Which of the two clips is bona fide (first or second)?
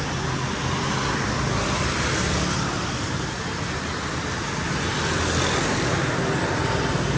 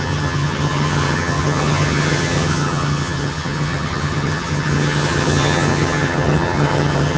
first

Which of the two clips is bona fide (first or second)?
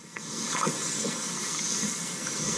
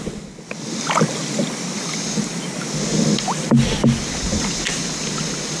second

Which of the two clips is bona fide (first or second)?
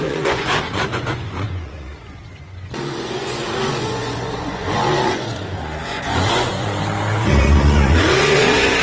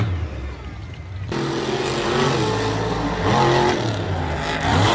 second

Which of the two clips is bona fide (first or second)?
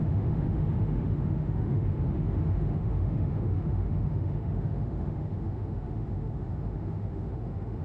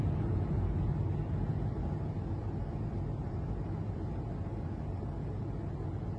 second